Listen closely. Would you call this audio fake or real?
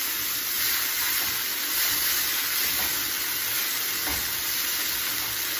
real